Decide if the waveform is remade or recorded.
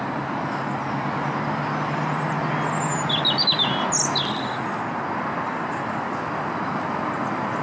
recorded